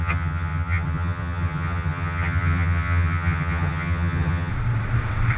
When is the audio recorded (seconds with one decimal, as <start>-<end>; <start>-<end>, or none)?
4.5-5.4